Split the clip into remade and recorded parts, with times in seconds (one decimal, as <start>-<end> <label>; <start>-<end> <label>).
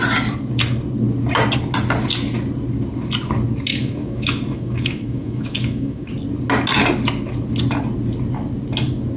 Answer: 0.0-3.7 recorded; 3.7-6.1 remade; 6.1-9.2 recorded